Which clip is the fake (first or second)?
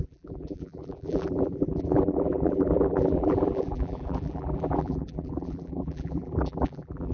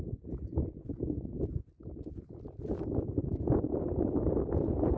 first